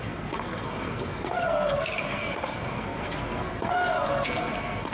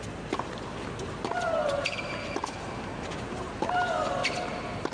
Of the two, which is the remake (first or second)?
first